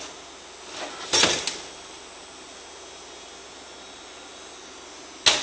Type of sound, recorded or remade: recorded